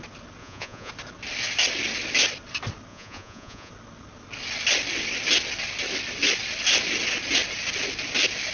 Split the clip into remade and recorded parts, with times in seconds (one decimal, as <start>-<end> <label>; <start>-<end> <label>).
0.0-0.4 recorded; 0.4-0.9 remade; 0.9-2.9 recorded; 2.9-3.7 remade; 3.7-8.5 recorded